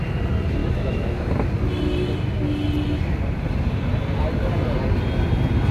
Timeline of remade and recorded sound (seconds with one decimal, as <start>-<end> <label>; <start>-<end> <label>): 0.0-0.6 recorded; 0.6-1.3 remade; 1.3-5.7 recorded